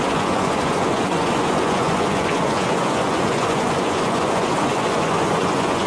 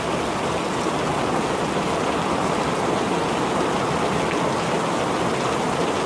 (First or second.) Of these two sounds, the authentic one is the second